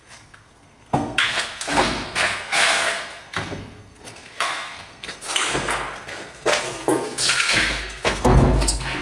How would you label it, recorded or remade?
remade